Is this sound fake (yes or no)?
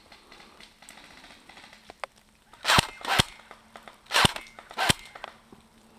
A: no